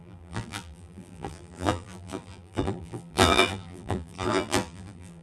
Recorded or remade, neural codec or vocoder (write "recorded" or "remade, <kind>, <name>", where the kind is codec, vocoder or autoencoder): remade, vocoder, BigVGAN v2